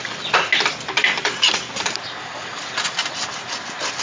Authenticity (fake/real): real